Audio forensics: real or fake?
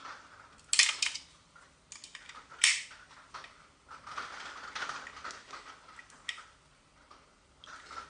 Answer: real